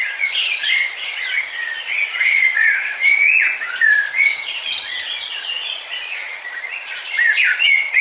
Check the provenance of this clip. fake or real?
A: fake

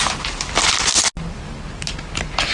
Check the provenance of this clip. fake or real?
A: real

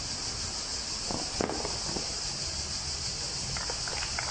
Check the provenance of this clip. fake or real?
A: real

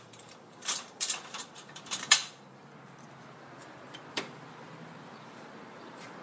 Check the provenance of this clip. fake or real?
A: fake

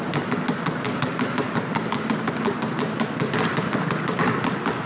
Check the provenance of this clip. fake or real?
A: real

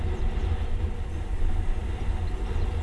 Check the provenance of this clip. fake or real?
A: real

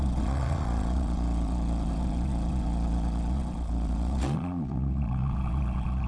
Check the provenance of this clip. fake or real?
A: fake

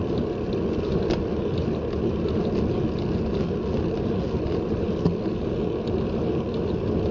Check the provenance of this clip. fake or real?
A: real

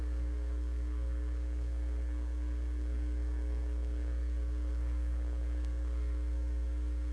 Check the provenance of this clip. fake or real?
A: fake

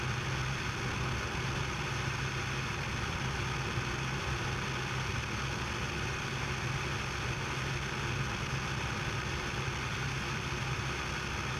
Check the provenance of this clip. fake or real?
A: real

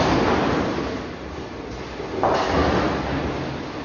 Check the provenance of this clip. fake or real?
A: real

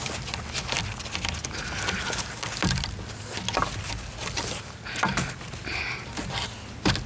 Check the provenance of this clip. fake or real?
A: real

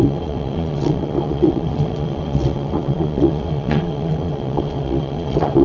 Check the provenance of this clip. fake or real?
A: fake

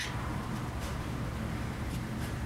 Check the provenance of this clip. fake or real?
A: fake